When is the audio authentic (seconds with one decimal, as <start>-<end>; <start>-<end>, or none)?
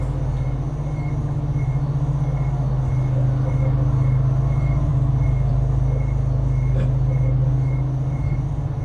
0.0-8.8